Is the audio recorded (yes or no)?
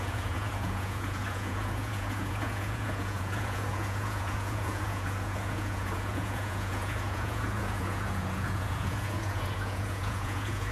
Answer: no